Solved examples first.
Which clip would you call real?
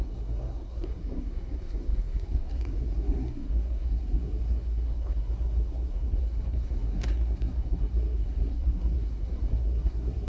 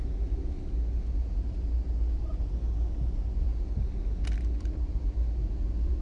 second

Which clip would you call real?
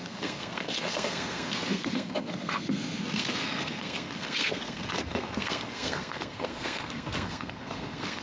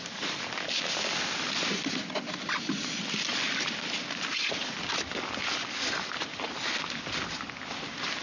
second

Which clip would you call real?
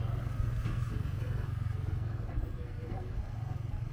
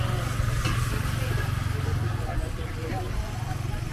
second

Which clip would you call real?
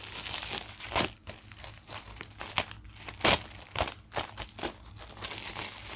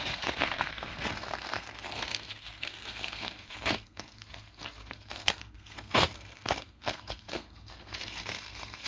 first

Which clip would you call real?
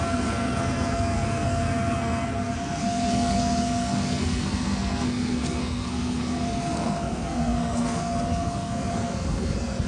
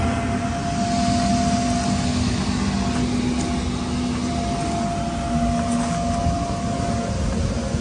second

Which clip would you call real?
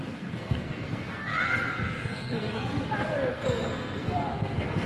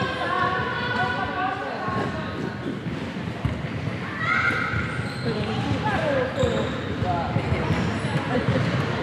second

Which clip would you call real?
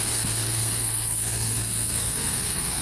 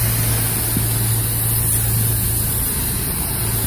second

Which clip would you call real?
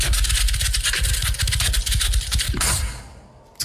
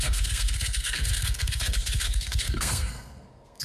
first